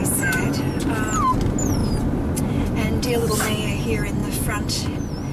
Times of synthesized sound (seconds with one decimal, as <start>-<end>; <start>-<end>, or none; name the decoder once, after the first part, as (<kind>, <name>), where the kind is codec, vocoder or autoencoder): none